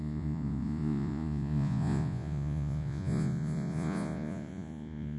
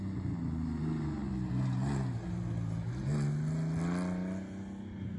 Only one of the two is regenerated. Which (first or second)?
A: first